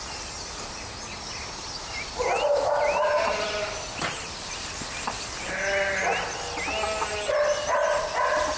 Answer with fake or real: real